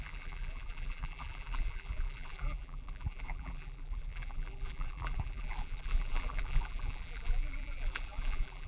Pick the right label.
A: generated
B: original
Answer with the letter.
A